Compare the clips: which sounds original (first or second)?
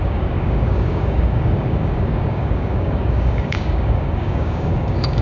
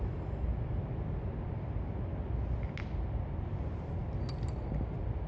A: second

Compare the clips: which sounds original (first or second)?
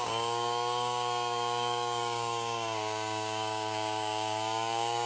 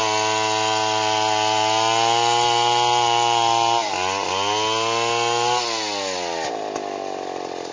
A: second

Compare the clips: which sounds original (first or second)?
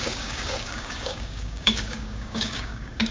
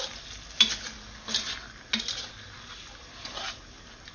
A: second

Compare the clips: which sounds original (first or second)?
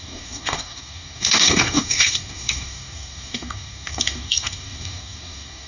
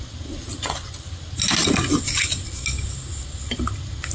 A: second